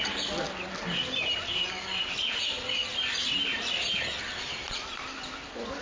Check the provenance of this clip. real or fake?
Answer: real